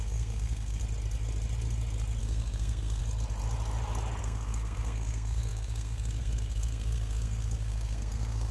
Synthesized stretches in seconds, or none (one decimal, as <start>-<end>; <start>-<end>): 0.0-0.8; 2.2-3.0; 4.2-8.5